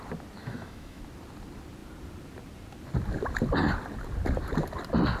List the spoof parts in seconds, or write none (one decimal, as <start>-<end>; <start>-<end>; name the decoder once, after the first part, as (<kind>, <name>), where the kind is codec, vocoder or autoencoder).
0.4-1.0 (autoencoder, DAC-VAE)